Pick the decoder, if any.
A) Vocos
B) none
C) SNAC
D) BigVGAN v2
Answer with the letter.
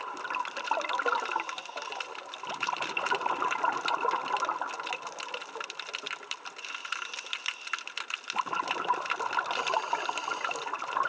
B